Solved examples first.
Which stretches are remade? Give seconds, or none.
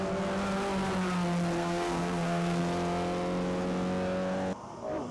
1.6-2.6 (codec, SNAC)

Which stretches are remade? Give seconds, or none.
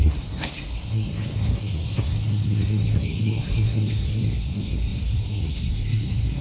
0.0-6.4 (codec, SNAC)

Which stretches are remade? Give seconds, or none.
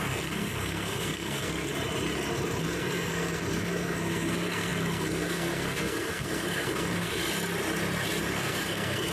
0.0-1.7 (codec, SNAC); 2.6-7.2; 8.2-9.1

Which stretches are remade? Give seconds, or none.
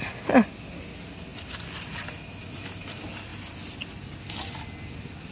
none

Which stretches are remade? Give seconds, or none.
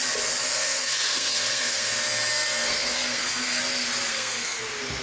0.5-1.9 (codec, SNAC); 2.3-3.6; 4.1-4.6